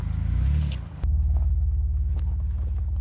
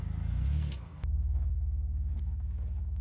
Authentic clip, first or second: first